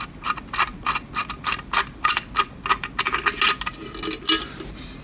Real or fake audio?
real